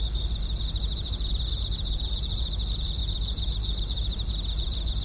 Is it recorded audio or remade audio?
remade